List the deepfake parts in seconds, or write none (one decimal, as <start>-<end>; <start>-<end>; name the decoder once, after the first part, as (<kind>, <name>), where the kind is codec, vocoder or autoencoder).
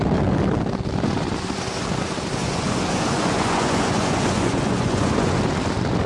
2.4-5.4 (vocoder, Vocos)